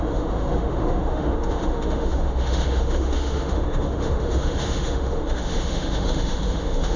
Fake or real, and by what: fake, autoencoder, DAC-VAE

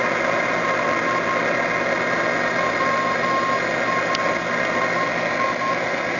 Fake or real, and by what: real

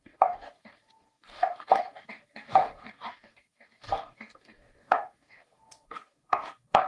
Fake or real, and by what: fake, codec, DAC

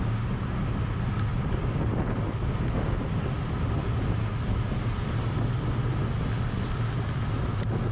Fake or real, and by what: real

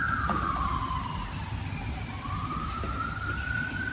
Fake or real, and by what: real